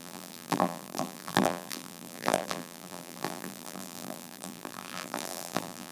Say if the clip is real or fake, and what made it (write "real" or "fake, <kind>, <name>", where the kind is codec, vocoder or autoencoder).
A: fake, vocoder, BigVGAN v2